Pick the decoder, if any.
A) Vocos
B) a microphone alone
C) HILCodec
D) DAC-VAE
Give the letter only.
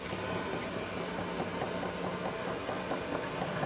B